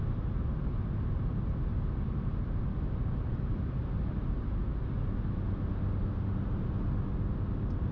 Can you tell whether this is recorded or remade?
recorded